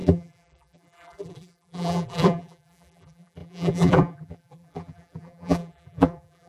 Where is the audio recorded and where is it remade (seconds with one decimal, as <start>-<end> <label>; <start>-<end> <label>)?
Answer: 0.0-6.5 remade